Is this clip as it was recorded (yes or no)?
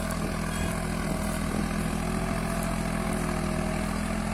yes